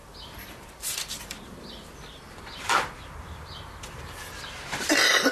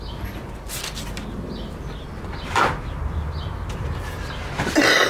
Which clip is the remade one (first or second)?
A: first